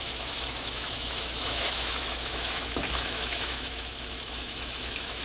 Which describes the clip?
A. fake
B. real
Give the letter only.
A